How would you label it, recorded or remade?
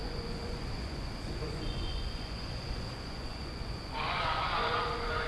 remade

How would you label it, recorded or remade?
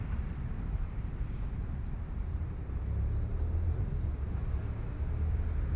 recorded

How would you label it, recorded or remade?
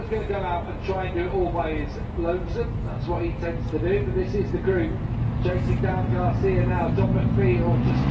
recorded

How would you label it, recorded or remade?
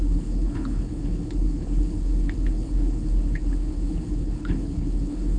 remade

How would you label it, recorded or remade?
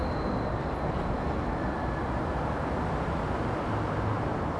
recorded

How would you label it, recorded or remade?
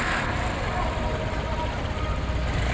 recorded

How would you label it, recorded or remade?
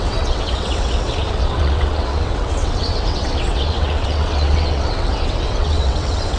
remade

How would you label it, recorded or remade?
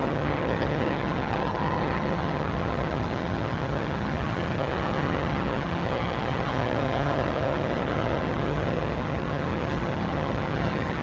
remade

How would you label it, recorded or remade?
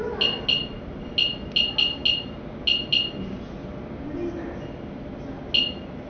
recorded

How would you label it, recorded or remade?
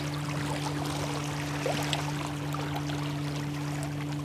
recorded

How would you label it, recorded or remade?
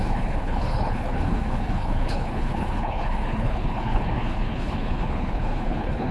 remade